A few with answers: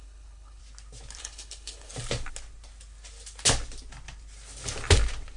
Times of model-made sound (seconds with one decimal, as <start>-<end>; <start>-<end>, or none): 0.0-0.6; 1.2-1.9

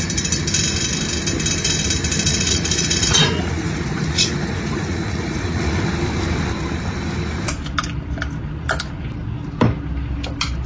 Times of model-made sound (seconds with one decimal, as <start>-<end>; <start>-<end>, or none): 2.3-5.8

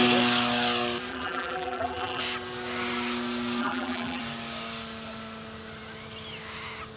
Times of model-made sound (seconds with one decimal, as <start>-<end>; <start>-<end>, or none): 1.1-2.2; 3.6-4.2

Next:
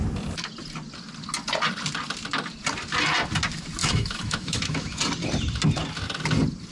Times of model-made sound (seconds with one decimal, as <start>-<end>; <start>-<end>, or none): 3.8-5.0

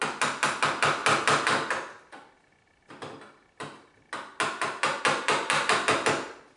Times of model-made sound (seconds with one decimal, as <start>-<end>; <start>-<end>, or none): none